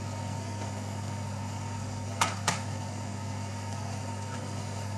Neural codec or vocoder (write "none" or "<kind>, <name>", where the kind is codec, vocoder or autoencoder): codec, SNAC